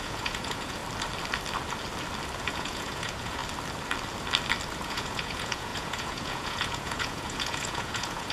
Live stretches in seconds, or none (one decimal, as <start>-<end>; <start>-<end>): 0.8-2.4; 3.4-4.8